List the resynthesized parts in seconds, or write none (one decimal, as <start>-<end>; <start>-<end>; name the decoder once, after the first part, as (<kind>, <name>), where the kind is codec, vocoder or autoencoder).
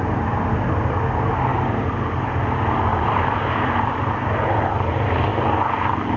1.5-2.2 (vocoder, BigVGAN v2); 2.9-4.7